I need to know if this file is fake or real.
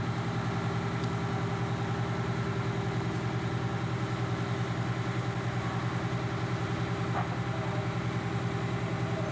real